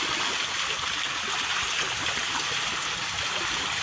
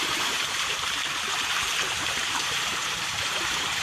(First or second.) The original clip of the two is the first